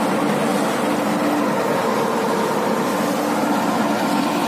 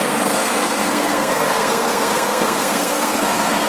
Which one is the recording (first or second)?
first